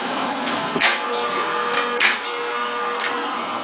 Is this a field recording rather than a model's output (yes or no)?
no